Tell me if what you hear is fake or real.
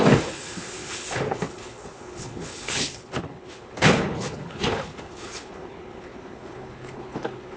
fake